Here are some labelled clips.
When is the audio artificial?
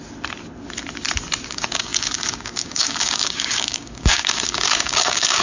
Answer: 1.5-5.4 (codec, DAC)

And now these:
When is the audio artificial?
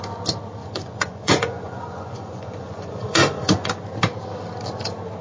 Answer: 0.6-3.7 (vocoder, Vocos)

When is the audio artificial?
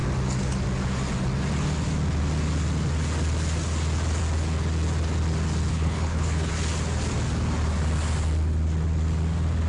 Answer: 5.7-6.5 (codec, HILCodec)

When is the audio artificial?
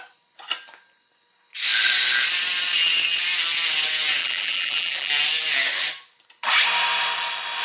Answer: 4.2-5.1 (vocoder, BigVGAN v2)